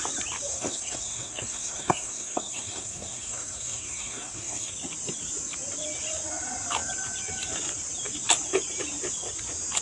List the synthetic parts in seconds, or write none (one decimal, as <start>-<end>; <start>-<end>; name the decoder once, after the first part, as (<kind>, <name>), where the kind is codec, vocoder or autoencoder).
0.5-4.7 (codec, SNAC)